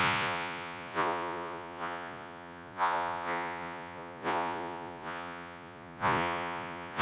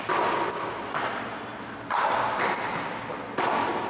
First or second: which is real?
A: second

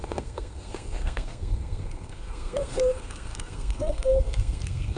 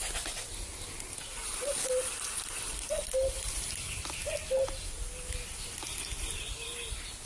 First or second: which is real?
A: second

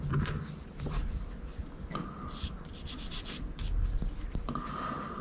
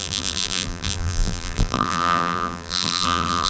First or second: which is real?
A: first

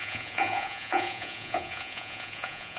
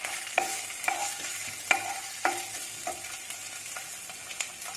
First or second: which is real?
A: second